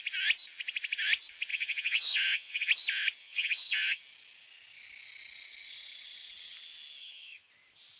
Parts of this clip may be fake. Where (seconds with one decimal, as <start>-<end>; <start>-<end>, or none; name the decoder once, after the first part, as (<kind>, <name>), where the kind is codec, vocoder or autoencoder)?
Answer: 1.5-2.7 (vocoder, HiFi-GAN); 3.2-4.0; 7.0-7.5